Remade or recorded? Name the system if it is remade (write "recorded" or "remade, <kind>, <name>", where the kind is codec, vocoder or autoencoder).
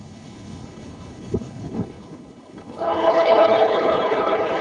remade, codec, HILCodec